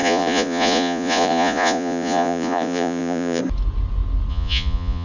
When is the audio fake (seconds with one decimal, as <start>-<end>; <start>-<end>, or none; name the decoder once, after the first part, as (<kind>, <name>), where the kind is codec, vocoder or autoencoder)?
0.0-3.4 (vocoder, Vocos); 4.3-5.0